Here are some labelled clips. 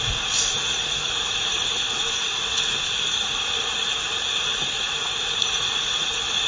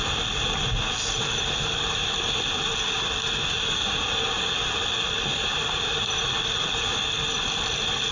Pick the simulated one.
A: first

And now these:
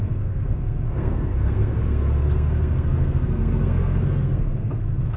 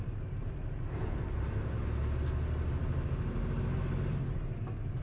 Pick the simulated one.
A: first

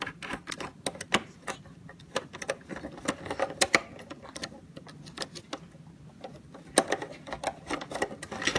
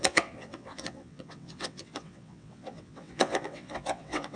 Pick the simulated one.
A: second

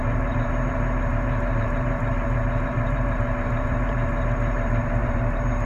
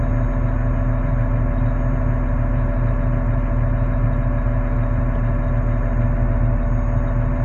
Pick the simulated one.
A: first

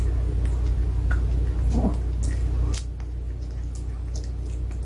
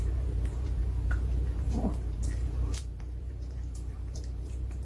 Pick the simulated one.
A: second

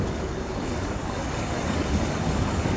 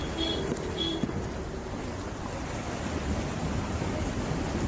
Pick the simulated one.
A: first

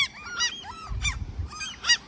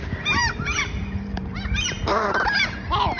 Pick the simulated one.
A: second